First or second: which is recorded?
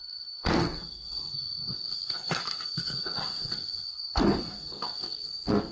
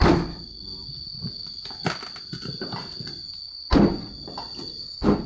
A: second